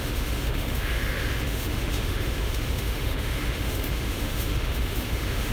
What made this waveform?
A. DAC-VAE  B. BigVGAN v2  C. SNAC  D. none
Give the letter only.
A